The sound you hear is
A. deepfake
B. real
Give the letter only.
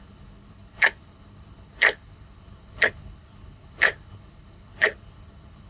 A